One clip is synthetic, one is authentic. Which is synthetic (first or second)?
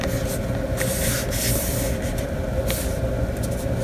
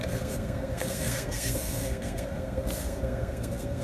second